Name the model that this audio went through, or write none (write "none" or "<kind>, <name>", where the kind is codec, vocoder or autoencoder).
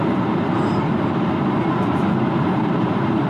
vocoder, BigVGAN v2